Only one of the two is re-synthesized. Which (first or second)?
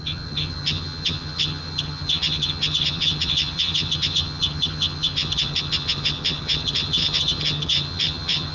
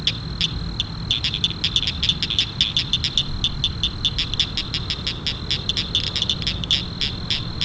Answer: first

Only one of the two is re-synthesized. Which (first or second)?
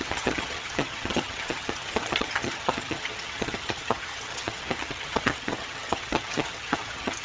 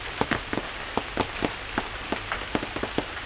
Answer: first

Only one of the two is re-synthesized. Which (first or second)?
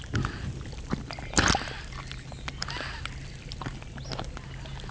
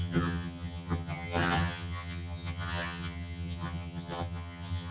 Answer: second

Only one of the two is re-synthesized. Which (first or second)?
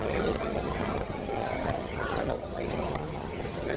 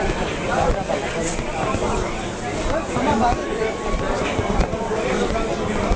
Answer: first